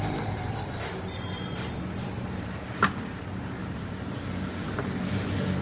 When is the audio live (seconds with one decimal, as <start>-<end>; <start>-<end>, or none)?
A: 0.0-3.6

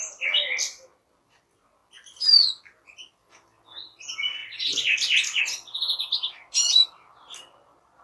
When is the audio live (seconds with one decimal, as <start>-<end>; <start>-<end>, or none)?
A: 0.0-8.0